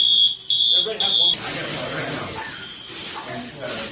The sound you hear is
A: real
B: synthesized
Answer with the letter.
A